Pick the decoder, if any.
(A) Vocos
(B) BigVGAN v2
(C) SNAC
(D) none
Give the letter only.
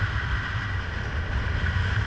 D